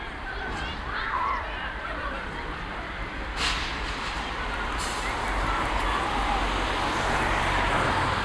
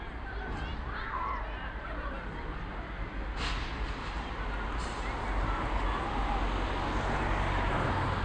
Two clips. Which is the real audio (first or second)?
second